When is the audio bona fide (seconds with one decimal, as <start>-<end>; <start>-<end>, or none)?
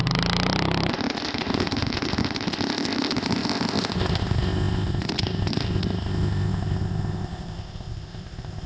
0.0-0.9